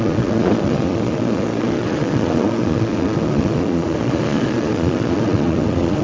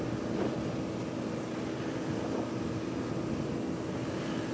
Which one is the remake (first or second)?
first